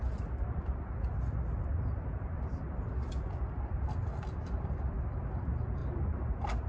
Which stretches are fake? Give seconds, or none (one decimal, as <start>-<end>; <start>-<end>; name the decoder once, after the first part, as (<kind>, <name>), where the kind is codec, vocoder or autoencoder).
none